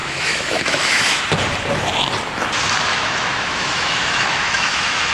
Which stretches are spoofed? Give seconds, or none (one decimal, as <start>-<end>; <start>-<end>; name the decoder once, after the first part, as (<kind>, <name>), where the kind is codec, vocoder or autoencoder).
0.0-1.2 (autoencoder, DAC-VAE); 2.9-5.1